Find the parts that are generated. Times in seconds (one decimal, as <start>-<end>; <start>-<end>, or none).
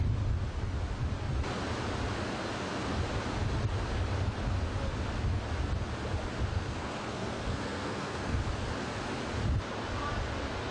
6.5-8.4